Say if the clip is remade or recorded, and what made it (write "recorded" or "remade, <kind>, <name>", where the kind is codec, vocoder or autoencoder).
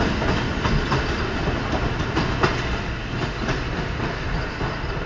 recorded